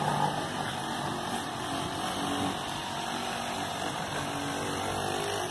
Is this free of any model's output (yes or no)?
yes